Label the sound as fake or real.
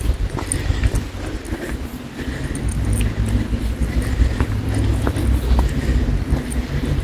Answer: real